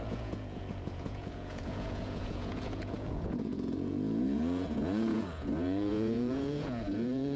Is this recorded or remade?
remade